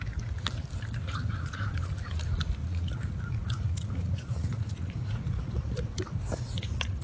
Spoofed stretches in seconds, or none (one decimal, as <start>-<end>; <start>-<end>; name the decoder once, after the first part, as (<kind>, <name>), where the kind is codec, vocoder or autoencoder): 1.2-1.9 (vocoder, Vocos); 2.6-7.0